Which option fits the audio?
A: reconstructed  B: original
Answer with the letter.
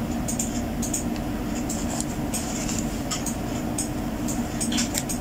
B